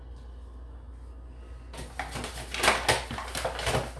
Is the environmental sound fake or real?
real